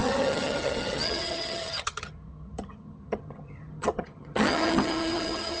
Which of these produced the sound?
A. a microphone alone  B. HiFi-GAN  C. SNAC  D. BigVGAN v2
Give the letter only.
B